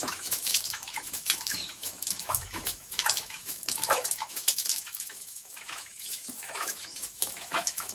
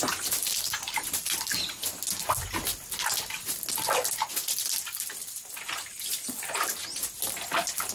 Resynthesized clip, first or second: first